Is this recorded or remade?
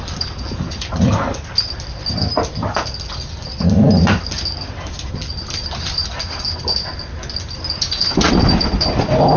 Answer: recorded